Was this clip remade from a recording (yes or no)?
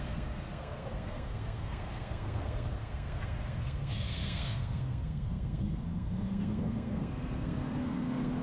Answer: yes